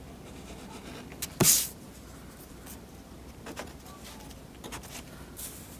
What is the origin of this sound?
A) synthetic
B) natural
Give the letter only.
B